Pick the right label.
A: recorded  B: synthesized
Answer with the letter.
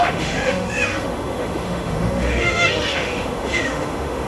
B